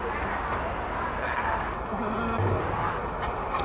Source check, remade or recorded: recorded